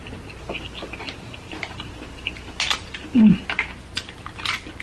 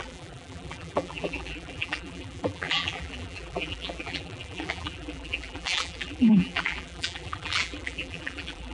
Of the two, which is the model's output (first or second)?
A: second